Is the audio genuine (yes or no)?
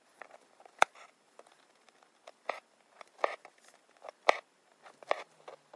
yes